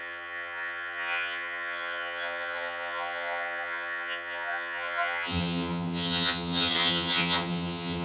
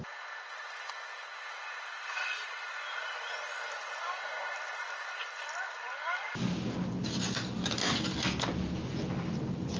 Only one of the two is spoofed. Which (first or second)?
first